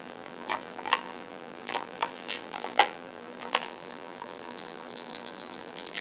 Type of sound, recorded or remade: remade